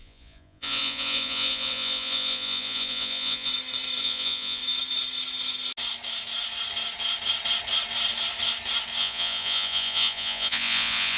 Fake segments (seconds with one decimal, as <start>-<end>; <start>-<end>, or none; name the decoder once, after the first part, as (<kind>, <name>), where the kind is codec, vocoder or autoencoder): 0.0-3.5 (vocoder, Vocos); 4.0-4.6; 9.0-11.2